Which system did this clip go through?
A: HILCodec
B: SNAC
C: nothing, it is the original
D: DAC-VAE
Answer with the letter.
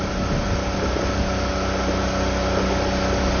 C